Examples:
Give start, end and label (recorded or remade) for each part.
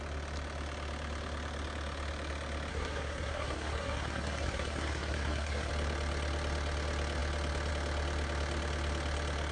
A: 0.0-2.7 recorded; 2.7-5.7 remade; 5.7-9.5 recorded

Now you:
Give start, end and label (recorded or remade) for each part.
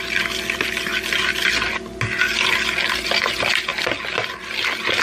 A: 0.0-5.0 recorded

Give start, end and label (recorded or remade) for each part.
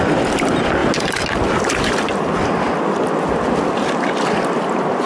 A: 0.0-5.1 recorded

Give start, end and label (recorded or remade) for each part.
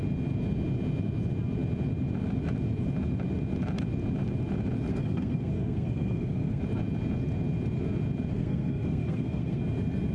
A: 0.0-4.9 recorded; 4.9-6.6 remade; 6.6-8.3 recorded; 8.3-9.6 remade; 9.6-10.1 recorded